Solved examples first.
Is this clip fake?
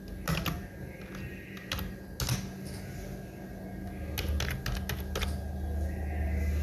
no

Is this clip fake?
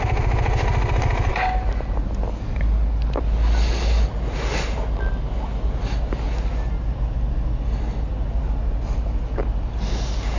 no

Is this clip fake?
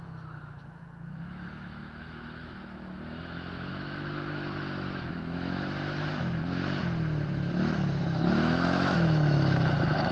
yes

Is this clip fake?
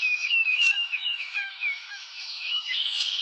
yes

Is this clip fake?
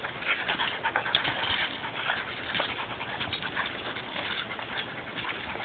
no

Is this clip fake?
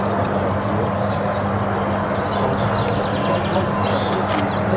no